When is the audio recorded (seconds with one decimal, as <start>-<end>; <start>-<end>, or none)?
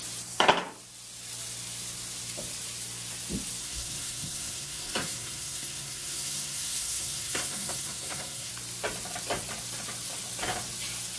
0.0-3.6; 8.5-11.2